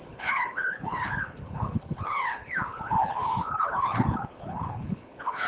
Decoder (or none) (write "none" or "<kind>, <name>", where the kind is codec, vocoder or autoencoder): codec, HILCodec